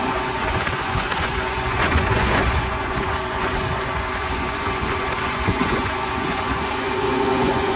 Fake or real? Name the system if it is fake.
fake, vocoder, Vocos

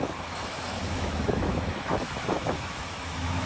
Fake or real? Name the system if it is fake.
fake, autoencoder, DAC-VAE